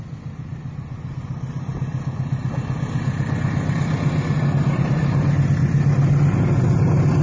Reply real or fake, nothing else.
real